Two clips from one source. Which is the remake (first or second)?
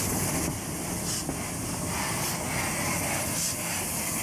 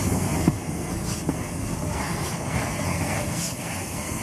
second